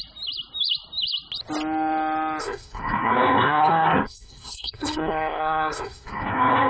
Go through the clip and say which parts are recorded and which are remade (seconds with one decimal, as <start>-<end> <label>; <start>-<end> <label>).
0.0-2.4 recorded; 2.4-6.7 remade